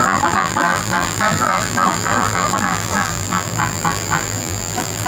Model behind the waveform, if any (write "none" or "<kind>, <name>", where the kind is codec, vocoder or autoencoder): vocoder, BigVGAN v2